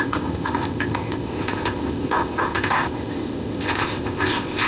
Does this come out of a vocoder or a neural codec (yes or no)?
yes